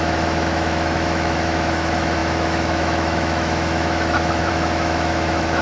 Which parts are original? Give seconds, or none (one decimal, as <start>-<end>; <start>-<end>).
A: none

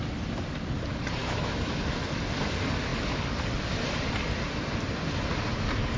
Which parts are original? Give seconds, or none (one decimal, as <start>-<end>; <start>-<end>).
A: 0.0-1.2; 1.8-6.0